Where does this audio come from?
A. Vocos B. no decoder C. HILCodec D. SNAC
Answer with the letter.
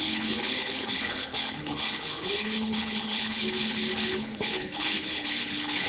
C